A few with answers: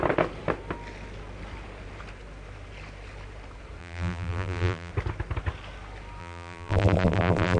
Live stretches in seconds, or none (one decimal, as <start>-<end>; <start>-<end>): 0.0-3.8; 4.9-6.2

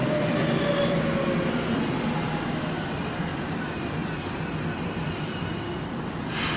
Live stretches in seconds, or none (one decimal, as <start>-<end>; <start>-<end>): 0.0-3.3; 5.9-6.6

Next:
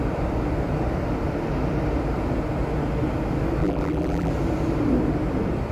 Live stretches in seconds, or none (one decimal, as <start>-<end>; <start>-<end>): 0.0-3.6; 4.3-5.7